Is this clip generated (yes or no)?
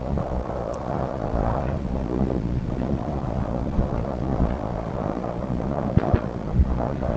yes